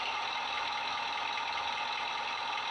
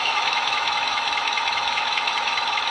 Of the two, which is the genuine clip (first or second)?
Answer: first